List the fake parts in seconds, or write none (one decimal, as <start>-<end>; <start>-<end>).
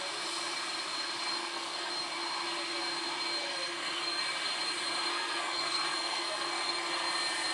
1.2-1.9; 3.4-4.2; 5.1-6.9